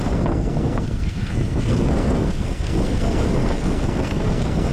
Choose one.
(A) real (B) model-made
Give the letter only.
B